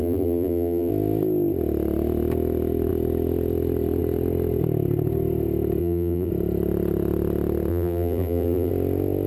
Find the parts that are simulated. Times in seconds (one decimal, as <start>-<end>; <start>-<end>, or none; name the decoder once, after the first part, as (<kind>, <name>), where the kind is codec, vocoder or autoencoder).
0.0-0.9 (vocoder, BigVGAN v2); 5.8-6.3; 7.7-8.7